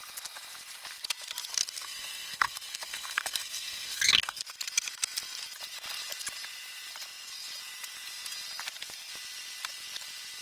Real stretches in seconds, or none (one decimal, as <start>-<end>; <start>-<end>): 0.0-1.5; 4.4-10.4